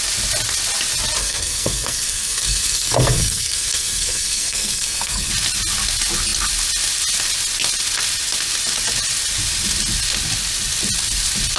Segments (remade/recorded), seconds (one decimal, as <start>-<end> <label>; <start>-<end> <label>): 0.0-1.2 recorded; 1.2-5.3 remade; 5.3-11.6 recorded